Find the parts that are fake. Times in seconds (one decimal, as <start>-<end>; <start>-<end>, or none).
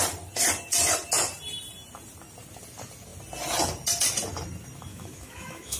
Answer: 4.9-5.8